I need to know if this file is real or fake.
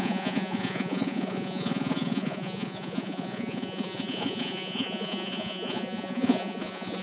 fake